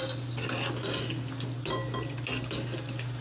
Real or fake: real